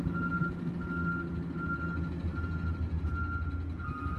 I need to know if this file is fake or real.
real